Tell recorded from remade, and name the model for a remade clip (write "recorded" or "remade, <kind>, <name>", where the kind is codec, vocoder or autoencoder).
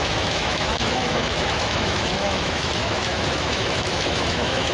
remade, autoencoder, DAC-VAE